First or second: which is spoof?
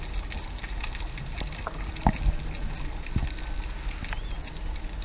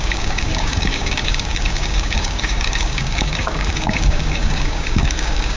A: second